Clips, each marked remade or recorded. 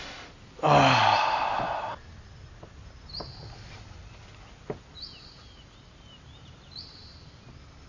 recorded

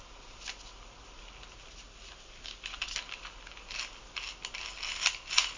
recorded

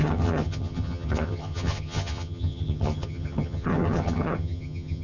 remade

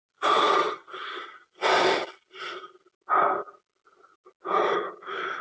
recorded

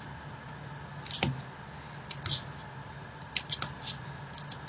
recorded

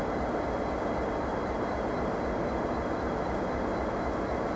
recorded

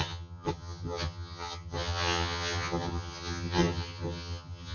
remade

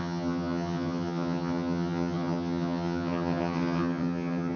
remade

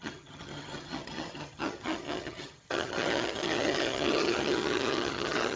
remade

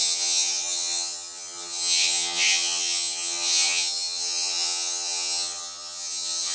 remade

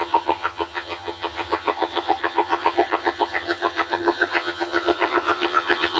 remade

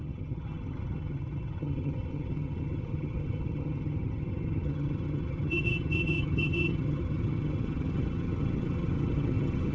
remade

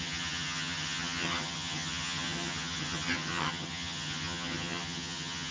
remade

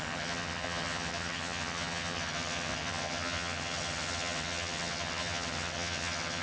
remade